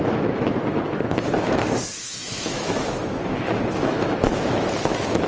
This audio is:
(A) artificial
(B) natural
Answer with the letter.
A